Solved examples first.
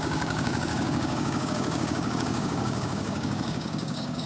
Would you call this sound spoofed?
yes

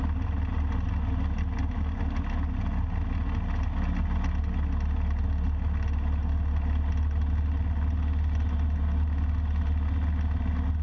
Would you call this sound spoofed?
no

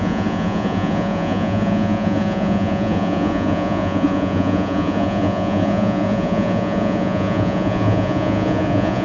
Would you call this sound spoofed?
yes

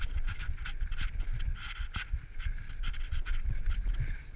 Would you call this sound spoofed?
no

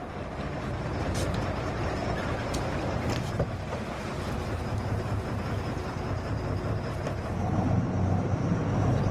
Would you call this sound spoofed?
yes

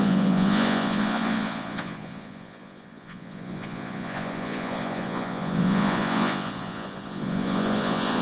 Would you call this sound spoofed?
yes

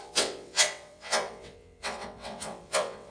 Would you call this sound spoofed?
yes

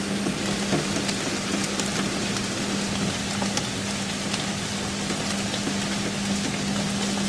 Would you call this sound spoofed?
no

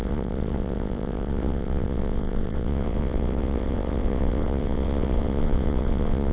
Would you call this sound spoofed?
yes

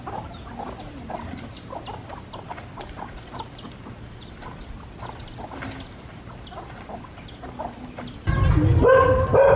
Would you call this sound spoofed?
no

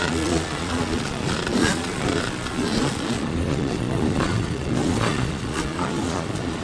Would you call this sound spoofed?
yes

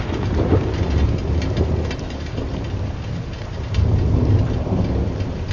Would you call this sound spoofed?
yes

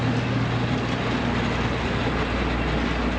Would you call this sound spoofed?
no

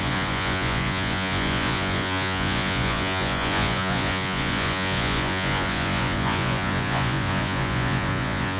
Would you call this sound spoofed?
yes